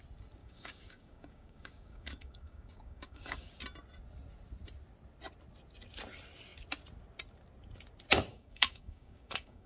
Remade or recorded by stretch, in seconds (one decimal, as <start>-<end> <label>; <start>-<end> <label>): 0.0-0.4 recorded; 0.4-3.6 remade; 3.6-8.3 recorded; 8.3-9.7 remade